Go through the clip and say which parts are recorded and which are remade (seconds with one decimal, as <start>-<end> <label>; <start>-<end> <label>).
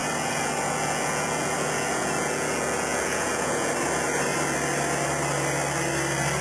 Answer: 0.0-3.7 remade; 3.7-6.4 recorded